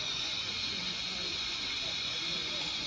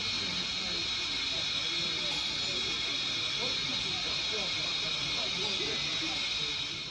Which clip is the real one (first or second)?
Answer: second